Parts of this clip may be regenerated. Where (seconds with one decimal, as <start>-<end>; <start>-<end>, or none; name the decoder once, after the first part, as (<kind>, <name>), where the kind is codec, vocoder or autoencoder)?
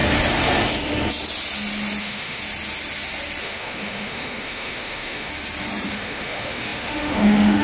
2.0-2.4 (autoencoder, DAC-VAE); 3.4-5.3; 5.9-7.6